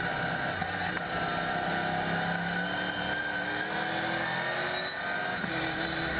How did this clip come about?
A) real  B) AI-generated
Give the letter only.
A